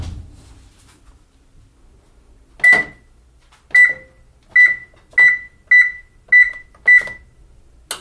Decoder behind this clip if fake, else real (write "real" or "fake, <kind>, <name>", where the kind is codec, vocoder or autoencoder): real